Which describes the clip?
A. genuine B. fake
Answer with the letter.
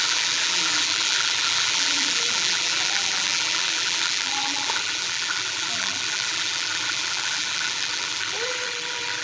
B